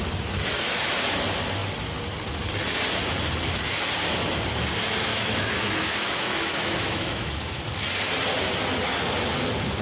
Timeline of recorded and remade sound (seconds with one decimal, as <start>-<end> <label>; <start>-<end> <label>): 0.0-5.1 recorded; 5.1-7.6 remade; 7.6-9.8 recorded